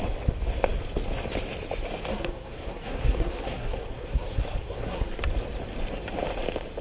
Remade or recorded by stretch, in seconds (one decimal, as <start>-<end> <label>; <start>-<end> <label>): 0.0-2.1 recorded; 2.1-5.2 remade; 5.2-6.8 recorded

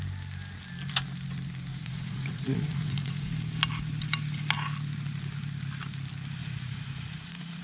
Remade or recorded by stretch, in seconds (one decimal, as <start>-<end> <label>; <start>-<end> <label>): 0.0-1.7 recorded; 1.7-3.3 remade; 3.3-6.4 recorded; 6.4-7.6 remade

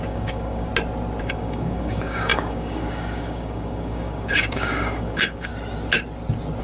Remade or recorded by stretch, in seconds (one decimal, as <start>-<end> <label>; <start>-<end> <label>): 0.0-0.7 remade; 0.7-1.2 recorded; 1.2-5.5 remade; 5.5-6.6 recorded

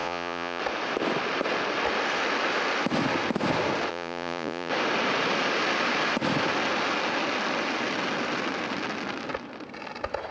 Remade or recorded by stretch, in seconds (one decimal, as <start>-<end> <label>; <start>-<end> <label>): 0.0-0.6 remade; 0.6-3.9 recorded; 3.9-4.7 remade; 4.7-10.3 recorded

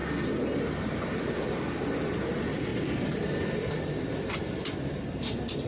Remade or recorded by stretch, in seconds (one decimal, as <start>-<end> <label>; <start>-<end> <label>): 0.0-0.6 recorded; 0.6-5.7 remade

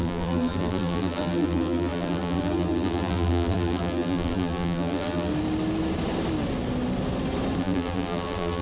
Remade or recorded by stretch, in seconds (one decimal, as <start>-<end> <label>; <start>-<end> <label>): 0.0-5.3 remade; 5.3-7.6 recorded; 7.6-8.6 remade

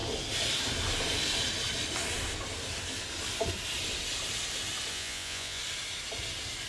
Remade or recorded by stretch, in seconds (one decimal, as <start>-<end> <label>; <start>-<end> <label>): 0.0-4.9 recorded; 4.9-5.6 remade; 5.6-6.7 recorded